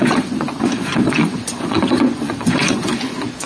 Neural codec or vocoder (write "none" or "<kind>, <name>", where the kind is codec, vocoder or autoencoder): vocoder, Vocos